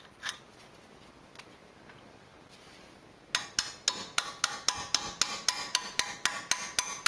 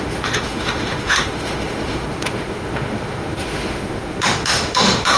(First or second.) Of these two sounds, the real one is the first